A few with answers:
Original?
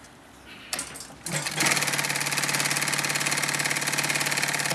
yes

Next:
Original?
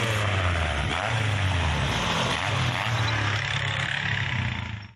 yes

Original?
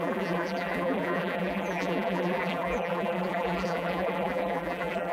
no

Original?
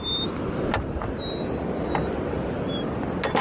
yes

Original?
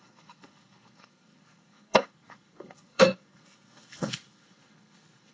no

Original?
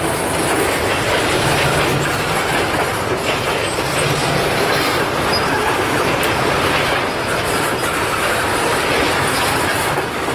yes